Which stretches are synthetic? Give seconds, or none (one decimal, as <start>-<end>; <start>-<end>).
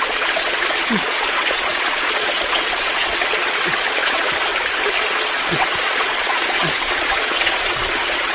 0.0-4.5; 5.0-8.3